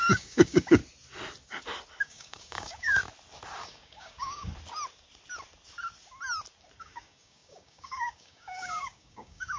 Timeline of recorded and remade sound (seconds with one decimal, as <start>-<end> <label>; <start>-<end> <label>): 0.0-0.8 remade; 0.8-2.0 recorded; 2.0-3.0 remade; 3.0-3.6 recorded; 3.6-4.5 remade; 4.5-6.8 recorded; 6.8-9.6 remade